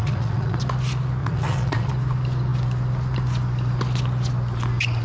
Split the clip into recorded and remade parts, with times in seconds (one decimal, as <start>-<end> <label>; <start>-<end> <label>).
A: 0.0-0.6 remade; 0.6-1.2 recorded; 1.2-1.9 remade; 1.9-5.0 recorded